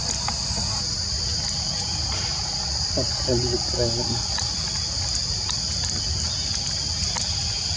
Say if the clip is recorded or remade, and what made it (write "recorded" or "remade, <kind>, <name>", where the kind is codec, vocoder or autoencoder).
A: recorded